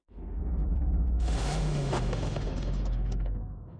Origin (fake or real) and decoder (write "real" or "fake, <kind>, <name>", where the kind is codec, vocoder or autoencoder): fake, autoencoder, DAC-VAE